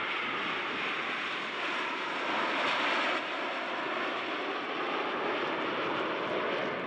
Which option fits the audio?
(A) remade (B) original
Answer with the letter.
B